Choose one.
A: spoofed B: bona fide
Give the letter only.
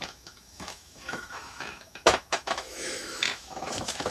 A